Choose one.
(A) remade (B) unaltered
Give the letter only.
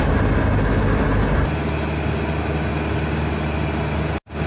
B